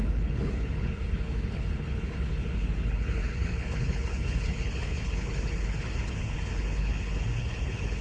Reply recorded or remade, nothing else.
remade